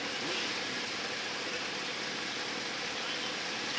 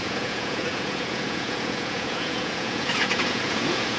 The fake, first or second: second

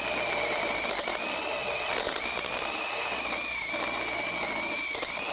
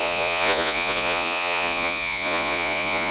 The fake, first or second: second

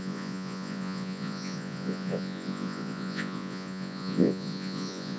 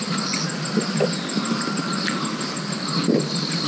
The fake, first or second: first